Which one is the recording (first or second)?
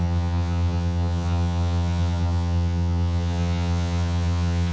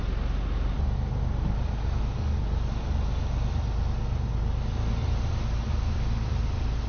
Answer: second